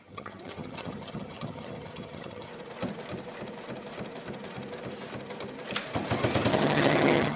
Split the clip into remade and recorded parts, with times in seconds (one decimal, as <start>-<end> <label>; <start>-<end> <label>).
0.0-2.5 remade; 2.5-6.5 recorded; 6.5-7.4 remade